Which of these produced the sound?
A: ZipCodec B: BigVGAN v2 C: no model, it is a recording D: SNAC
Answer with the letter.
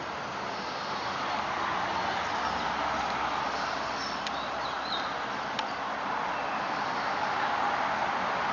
C